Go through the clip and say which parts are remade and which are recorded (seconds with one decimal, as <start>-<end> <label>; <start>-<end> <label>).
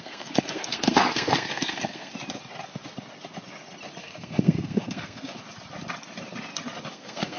0.0-2.1 remade; 2.1-4.0 recorded; 4.0-5.4 remade; 5.4-6.9 recorded; 6.9-7.4 remade